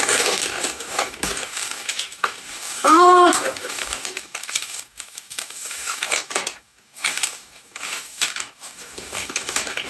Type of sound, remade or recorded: remade